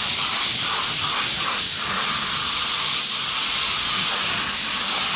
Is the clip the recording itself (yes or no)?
yes